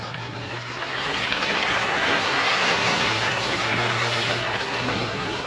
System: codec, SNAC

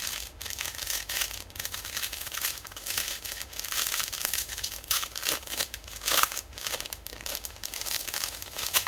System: autoencoder, DAC-VAE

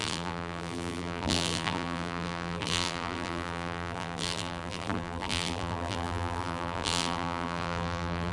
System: vocoder, BigVGAN v2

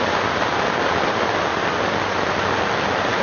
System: none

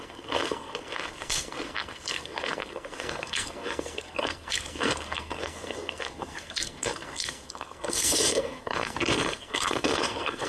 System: codec, SNAC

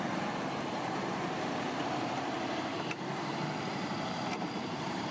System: vocoder, BigVGAN v2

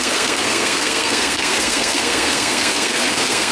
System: codec, SNAC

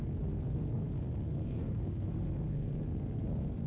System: codec, SNAC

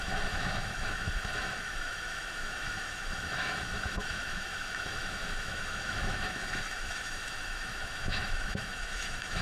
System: autoencoder, DAC-VAE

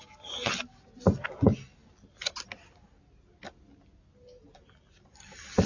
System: none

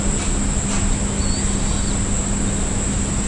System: none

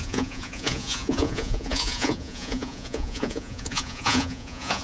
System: vocoder, Vocos